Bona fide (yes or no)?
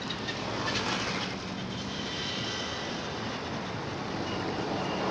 yes